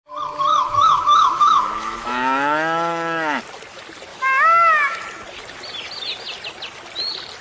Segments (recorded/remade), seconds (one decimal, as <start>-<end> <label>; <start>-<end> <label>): 0.0-0.5 recorded; 0.5-3.4 remade; 3.4-4.1 recorded; 4.1-5.0 remade; 5.0-7.4 recorded